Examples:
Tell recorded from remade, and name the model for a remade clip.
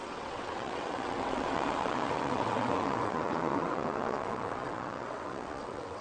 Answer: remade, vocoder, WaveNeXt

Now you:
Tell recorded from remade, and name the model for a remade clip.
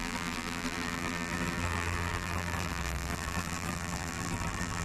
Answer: remade, vocoder, BigVGAN v2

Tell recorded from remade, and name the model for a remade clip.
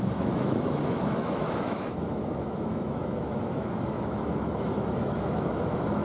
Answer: remade, autoencoder, DAC-VAE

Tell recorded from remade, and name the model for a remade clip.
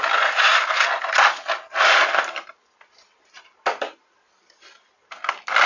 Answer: recorded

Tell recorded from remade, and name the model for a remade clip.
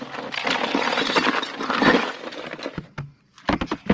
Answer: recorded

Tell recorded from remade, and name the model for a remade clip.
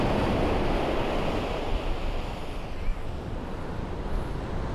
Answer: recorded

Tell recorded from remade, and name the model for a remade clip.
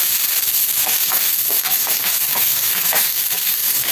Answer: remade, codec, DAC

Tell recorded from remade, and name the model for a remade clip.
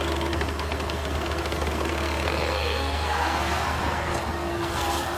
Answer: remade, codec, SNAC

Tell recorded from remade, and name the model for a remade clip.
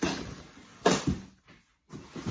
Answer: recorded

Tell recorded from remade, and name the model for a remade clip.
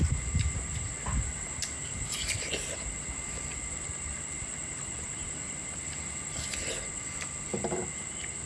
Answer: recorded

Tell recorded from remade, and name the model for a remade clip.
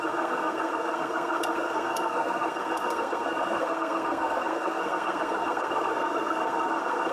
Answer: remade, codec, SNAC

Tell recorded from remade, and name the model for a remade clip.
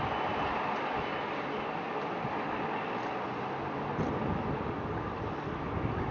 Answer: recorded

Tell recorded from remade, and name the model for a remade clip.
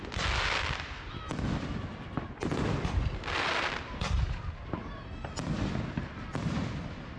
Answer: recorded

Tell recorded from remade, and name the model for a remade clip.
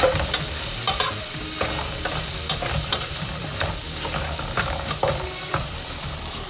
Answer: recorded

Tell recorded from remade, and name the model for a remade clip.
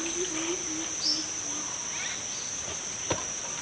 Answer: recorded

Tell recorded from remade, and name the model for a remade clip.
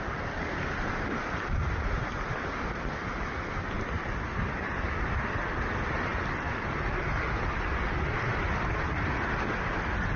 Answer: recorded